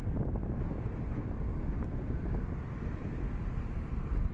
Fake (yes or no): no